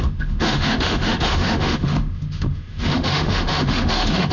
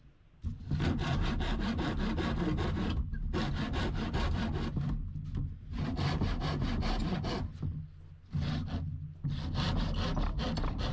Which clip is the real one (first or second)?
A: second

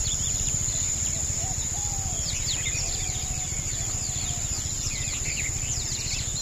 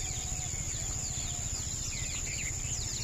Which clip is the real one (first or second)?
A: second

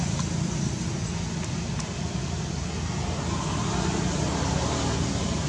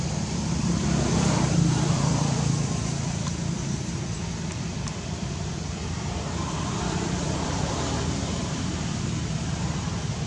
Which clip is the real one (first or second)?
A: first